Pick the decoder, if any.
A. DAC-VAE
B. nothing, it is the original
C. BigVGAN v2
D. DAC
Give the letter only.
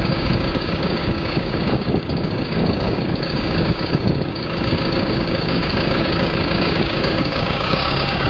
D